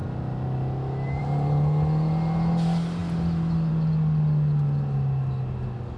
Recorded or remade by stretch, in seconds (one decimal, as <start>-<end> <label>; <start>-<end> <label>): 0.0-6.0 recorded